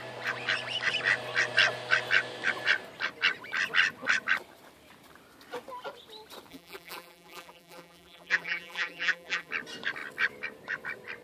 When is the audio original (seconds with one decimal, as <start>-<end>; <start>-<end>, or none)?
0.0-6.5; 9.5-11.2